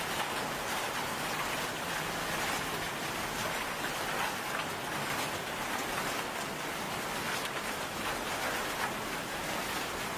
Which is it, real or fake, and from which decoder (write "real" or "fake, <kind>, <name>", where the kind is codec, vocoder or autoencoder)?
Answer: real